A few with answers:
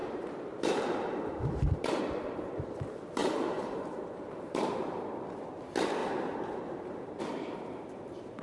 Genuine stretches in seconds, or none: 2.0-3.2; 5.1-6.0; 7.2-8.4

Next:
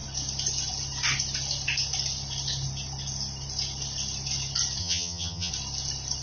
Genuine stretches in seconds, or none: 0.0-4.8; 5.5-6.2

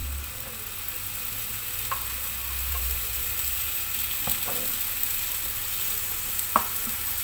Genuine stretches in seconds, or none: 0.0-2.7; 4.0-6.3

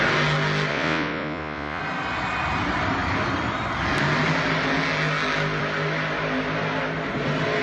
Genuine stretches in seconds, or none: 0.0-0.7; 1.8-7.6

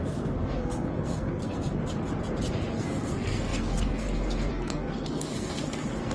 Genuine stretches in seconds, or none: 1.8-2.7

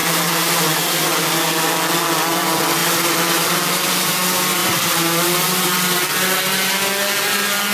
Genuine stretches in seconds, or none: 0.0-4.6; 6.0-7.7

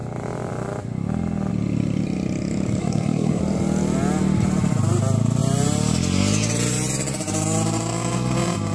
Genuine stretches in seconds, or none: 0.0-2.8; 3.4-8.7